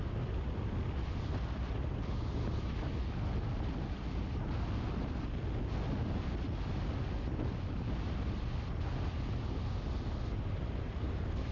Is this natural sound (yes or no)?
yes